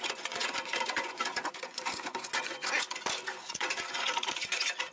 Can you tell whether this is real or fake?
fake